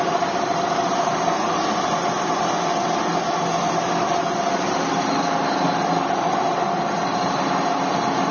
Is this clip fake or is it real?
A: real